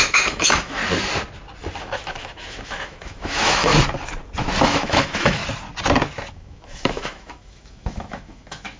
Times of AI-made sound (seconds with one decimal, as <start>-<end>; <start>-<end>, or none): 0.0-0.8; 1.8-3.7; 4.6-5.4; 6.3-8.8